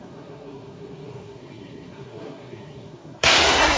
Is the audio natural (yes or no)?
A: no